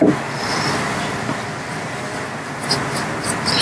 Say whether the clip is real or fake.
real